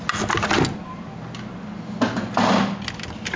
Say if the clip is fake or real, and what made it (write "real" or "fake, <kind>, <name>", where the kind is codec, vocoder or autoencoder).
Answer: real